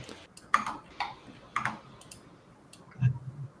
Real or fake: real